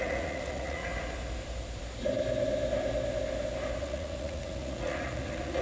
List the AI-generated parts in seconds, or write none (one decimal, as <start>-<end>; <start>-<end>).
0.0-0.8; 3.8-5.6